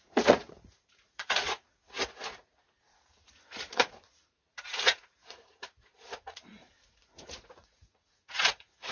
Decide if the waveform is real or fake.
fake